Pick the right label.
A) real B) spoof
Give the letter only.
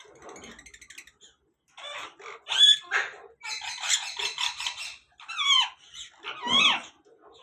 A